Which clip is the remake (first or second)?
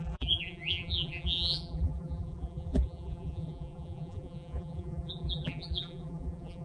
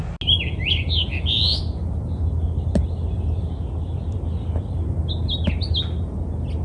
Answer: first